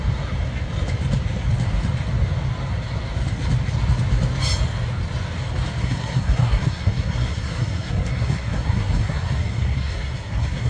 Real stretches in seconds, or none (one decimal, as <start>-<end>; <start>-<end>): 0.0-5.8